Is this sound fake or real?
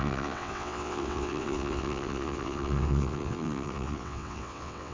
fake